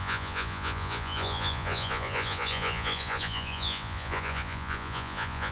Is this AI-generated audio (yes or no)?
yes